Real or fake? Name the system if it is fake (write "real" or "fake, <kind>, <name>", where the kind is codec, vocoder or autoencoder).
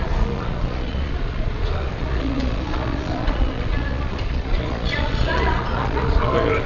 fake, vocoder, Vocos